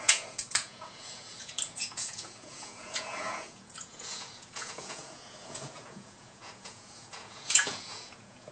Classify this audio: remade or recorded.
remade